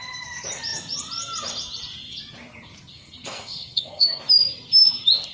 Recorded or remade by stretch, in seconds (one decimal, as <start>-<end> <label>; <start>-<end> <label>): 0.0-2.9 recorded; 2.9-4.2 remade; 4.2-5.3 recorded